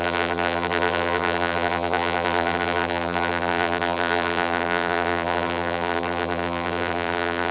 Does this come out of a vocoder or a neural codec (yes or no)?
yes